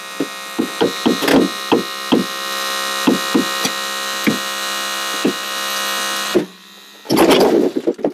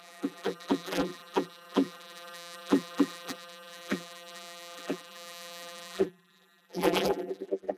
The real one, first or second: first